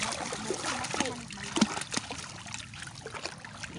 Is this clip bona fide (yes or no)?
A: yes